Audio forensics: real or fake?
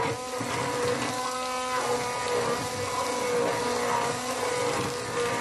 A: real